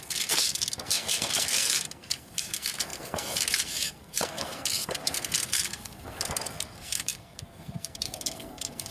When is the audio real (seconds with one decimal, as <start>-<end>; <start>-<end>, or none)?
none